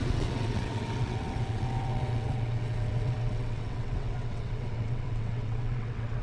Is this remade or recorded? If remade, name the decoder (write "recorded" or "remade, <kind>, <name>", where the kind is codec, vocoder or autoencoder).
remade, vocoder, WaveNeXt